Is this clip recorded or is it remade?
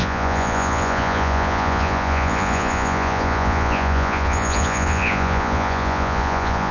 remade